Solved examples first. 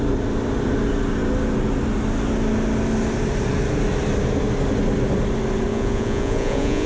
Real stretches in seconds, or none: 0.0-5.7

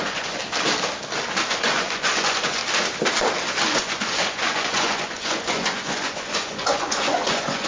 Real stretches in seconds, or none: 0.4-1.5; 2.6-3.6

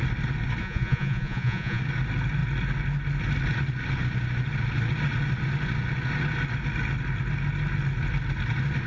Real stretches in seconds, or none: 0.0-0.6; 1.8-8.9

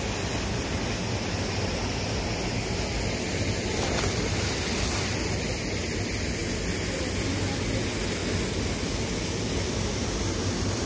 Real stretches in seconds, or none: 0.0-10.9